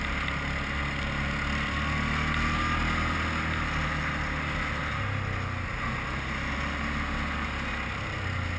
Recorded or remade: recorded